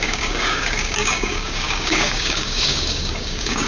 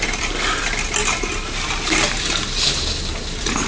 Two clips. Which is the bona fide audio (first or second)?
second